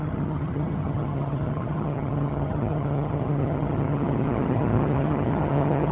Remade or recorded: remade